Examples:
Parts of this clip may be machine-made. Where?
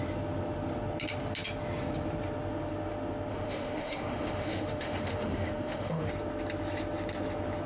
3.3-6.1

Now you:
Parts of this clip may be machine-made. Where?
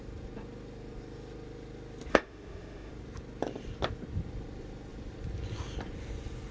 2.1-2.9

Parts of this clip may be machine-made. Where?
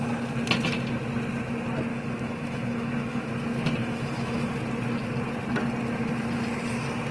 1.9-3.3; 3.8-4.5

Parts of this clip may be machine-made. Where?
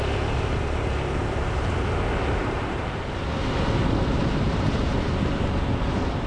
1.2-1.7; 2.4-3.0; 4.2-4.8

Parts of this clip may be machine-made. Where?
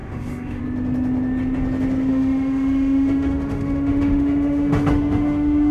0.0-0.6; 2.1-5.7